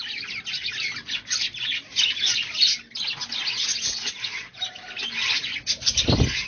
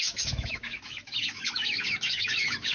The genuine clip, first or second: first